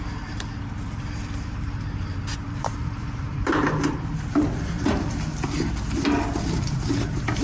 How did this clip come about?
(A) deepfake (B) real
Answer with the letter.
A